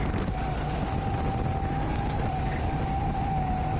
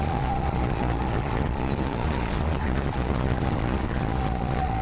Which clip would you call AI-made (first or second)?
second